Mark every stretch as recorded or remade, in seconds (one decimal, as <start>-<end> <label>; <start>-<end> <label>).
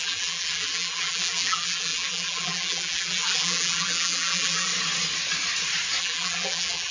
0.0-4.7 remade; 4.7-6.0 recorded; 6.0-6.9 remade